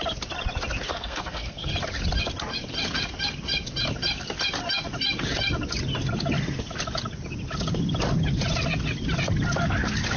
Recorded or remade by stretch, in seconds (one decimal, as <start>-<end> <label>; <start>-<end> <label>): 0.0-0.9 recorded; 0.9-1.7 remade; 1.7-10.2 recorded